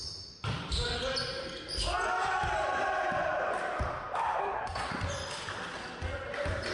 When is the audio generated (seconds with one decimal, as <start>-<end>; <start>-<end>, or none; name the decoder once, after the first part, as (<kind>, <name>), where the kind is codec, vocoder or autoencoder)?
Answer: 4.4-4.9 (codec, SNAC)